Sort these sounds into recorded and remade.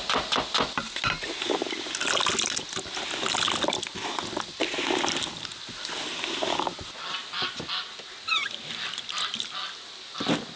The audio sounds recorded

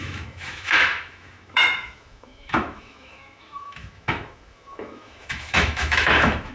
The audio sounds remade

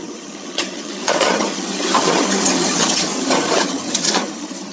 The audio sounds remade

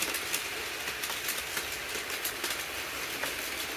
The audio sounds recorded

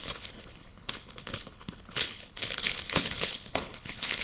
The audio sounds remade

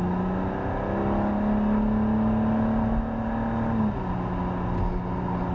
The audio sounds recorded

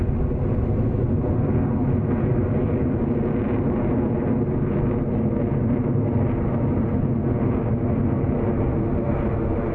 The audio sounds recorded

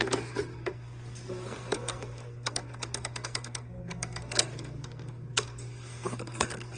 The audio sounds remade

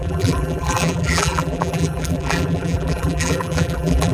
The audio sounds remade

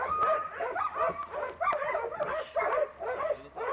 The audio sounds recorded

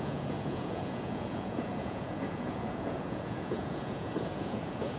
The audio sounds remade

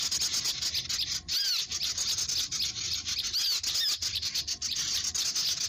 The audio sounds recorded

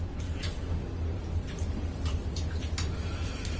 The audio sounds recorded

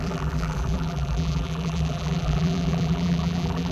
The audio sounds remade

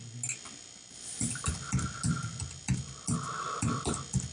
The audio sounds recorded